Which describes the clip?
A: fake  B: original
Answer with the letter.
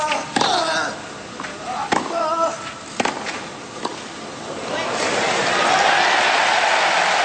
B